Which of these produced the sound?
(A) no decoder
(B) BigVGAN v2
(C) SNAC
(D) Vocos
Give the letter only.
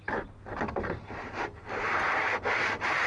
A